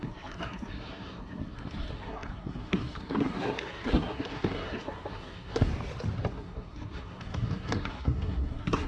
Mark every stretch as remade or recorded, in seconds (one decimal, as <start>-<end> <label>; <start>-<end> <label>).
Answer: 0.0-5.7 remade; 5.7-6.3 recorded; 6.3-8.9 remade